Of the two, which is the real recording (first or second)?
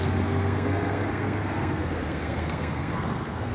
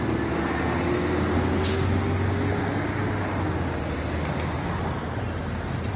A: second